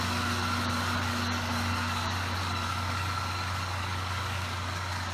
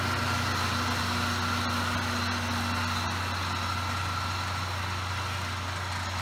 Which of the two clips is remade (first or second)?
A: first